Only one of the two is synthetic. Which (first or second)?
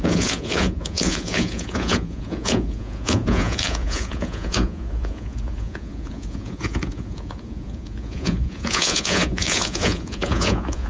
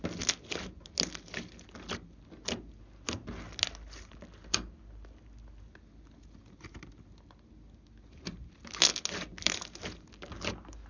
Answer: first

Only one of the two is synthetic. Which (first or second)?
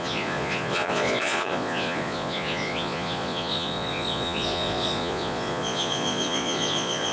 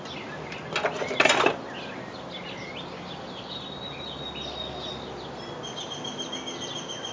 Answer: first